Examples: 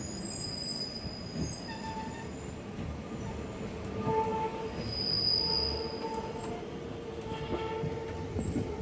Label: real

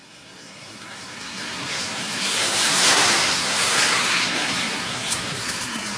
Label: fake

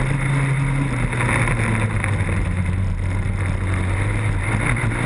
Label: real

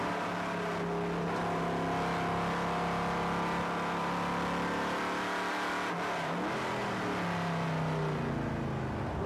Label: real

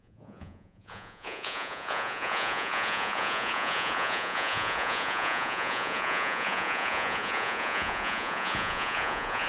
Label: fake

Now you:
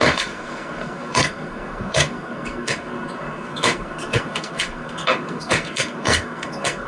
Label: fake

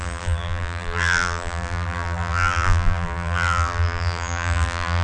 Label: fake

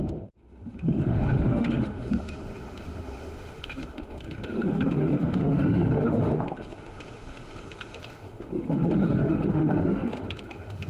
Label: fake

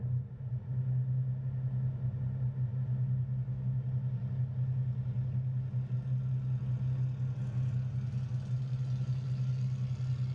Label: real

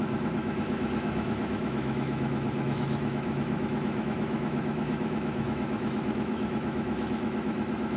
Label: fake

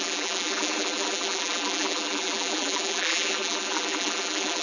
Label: fake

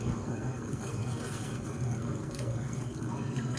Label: fake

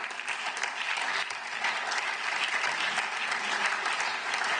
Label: real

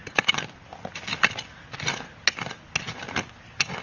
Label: real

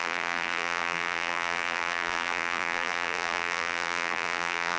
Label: fake